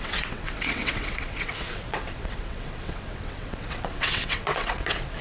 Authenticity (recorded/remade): remade